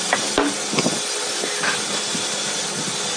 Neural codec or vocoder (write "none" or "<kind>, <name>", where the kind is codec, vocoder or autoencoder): none